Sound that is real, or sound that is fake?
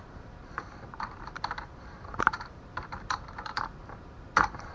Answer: fake